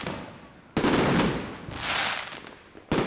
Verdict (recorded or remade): recorded